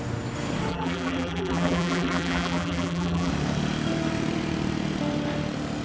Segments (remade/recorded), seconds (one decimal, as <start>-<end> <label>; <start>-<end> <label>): 0.0-0.7 recorded; 0.7-3.3 remade; 3.3-5.8 recorded